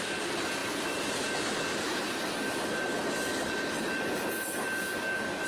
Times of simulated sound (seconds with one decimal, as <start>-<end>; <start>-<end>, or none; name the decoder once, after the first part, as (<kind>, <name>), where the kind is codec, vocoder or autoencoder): none